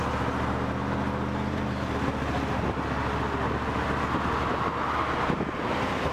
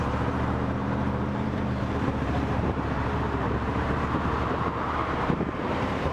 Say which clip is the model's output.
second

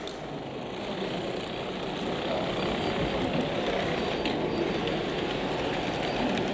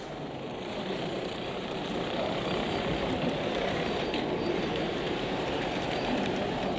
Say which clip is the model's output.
second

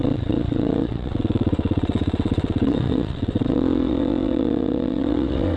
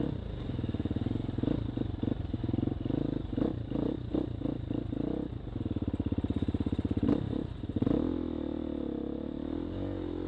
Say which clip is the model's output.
first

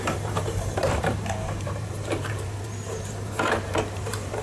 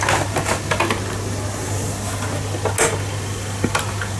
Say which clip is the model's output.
first